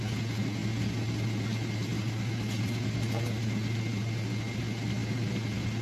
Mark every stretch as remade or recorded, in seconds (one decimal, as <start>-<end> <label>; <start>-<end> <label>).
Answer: 0.0-5.8 recorded